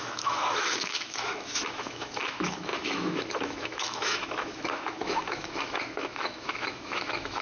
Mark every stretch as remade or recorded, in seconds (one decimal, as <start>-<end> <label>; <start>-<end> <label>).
0.0-7.4 remade